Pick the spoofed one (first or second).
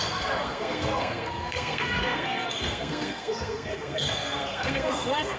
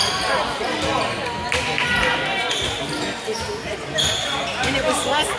first